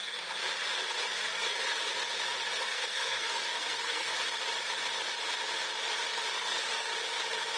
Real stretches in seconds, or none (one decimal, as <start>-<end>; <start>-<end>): 0.4-2.6; 4.1-6.3; 6.9-7.6